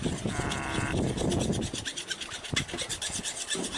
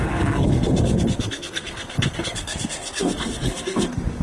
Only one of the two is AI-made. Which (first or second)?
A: second